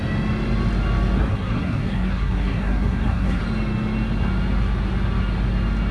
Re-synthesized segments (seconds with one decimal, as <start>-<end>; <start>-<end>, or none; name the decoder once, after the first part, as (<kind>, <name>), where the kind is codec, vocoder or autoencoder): 1.3-3.4 (codec, SNAC)